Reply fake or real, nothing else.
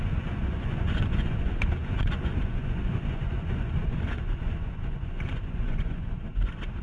fake